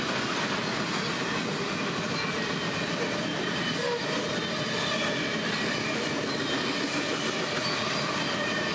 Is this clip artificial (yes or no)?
no